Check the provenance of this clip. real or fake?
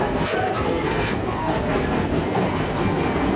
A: fake